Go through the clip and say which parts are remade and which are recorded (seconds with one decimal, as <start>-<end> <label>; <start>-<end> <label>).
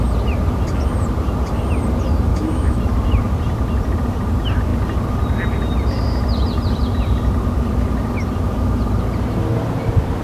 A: 0.0-2.3 recorded; 2.3-2.8 remade; 2.8-10.2 recorded